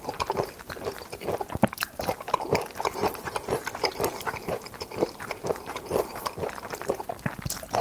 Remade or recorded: remade